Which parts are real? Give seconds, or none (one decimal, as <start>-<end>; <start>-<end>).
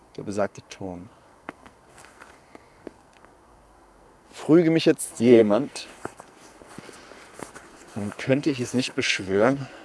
4.3-5.0